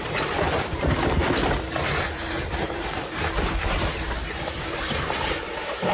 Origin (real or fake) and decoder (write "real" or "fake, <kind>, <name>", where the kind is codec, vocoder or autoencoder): fake, vocoder, BigVGAN v2